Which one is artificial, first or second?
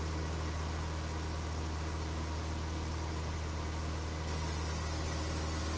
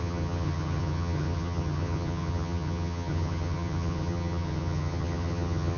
second